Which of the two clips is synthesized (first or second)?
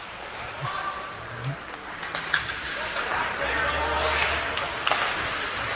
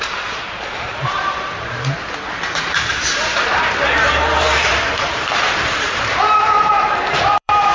second